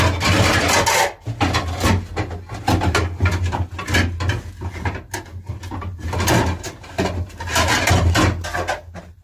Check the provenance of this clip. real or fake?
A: real